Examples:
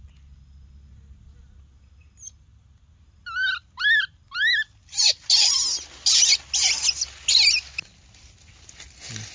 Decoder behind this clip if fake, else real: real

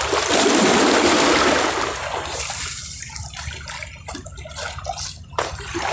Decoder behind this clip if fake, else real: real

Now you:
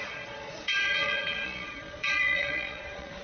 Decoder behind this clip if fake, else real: fake, vocoder, Vocos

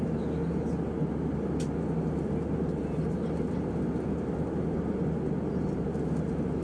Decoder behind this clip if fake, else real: real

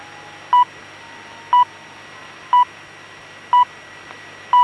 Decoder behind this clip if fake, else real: real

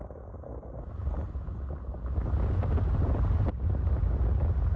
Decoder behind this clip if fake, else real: real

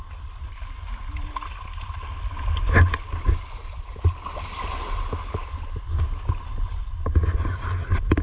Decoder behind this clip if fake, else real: real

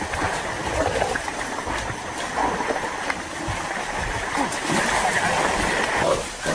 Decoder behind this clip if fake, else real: real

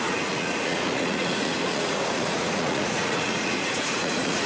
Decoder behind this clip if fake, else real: fake, vocoder, Vocos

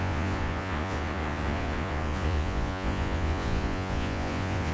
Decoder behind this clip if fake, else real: fake, vocoder, Vocos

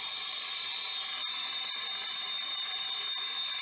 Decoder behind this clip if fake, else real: real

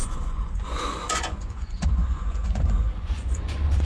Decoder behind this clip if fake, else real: fake, vocoder, Vocos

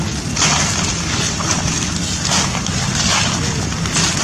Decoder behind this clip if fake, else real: real